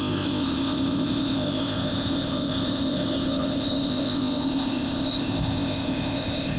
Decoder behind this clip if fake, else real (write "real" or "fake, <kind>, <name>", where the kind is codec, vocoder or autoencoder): fake, codec, ZipCodec